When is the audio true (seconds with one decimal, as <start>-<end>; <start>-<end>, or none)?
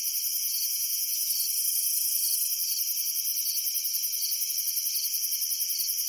0.0-0.4; 1.3-6.1